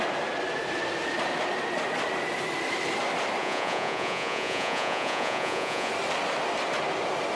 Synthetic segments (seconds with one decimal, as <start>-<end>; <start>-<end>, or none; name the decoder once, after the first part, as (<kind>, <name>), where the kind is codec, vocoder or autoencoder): 3.4-5.9 (vocoder, Vocos)